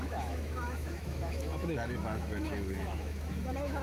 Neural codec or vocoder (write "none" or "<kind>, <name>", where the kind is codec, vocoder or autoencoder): autoencoder, DAC-VAE